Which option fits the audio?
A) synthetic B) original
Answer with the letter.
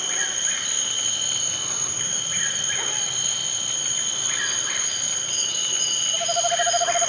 B